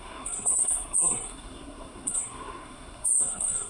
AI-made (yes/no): yes